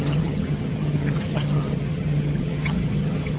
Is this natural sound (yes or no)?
no